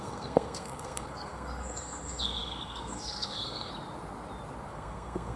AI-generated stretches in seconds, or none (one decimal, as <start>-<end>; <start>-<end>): 0.0-3.7; 4.7-5.4